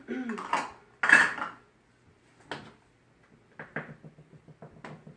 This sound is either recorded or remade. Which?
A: recorded